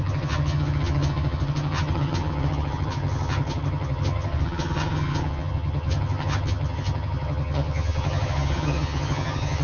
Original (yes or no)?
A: no